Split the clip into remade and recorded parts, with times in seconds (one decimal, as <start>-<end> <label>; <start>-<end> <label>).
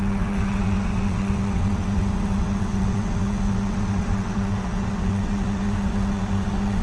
0.0-6.8 remade